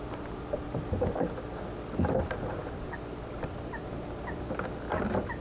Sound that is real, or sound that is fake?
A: real